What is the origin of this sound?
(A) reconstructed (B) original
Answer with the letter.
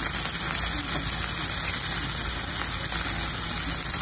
B